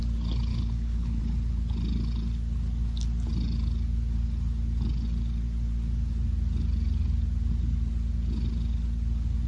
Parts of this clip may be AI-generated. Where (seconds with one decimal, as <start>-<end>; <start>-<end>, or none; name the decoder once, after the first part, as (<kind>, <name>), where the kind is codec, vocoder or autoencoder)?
0.5-1.2 (codec, HILCodec)